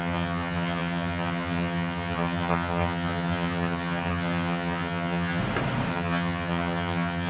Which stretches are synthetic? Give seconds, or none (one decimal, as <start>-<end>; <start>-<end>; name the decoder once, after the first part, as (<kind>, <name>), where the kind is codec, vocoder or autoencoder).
0.0-5.4 (vocoder, HiFi-GAN); 5.9-7.3